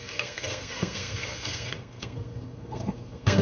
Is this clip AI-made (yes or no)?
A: yes